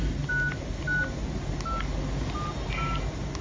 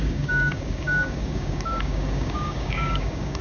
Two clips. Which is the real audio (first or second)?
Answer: first